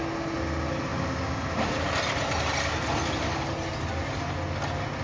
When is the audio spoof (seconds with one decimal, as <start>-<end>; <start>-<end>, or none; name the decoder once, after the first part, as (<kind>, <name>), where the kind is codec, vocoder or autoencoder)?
none